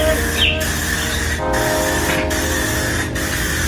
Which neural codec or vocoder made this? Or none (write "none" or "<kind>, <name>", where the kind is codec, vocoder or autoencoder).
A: none